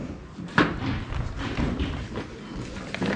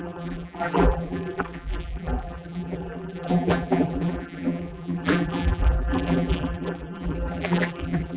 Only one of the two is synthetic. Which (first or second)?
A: second